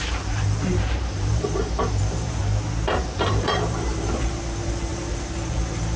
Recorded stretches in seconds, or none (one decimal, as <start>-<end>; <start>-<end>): 2.4-3.0